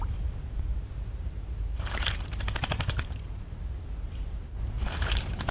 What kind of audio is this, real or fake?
fake